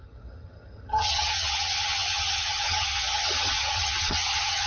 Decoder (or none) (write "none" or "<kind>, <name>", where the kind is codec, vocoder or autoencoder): vocoder, HiFi-GAN